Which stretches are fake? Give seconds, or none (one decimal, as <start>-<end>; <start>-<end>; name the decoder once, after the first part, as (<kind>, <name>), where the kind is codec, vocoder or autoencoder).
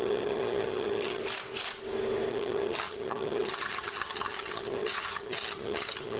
0.0-1.2 (vocoder, HiFi-GAN); 2.3-6.2